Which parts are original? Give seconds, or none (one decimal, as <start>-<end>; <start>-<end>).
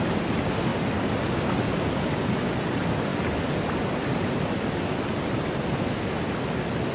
0.0-6.9